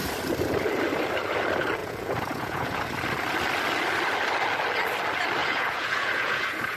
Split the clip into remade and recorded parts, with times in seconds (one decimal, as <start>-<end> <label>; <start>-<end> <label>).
0.0-1.8 recorded; 1.8-2.8 remade; 2.8-5.4 recorded; 5.4-6.8 remade